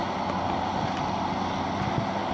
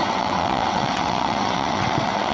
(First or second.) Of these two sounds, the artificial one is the second